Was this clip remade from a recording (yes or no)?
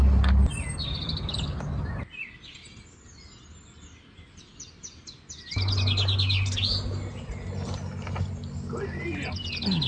no